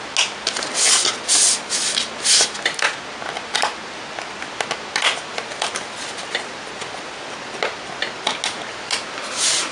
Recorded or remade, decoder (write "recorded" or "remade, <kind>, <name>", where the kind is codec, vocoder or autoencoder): recorded